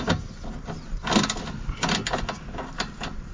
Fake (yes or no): no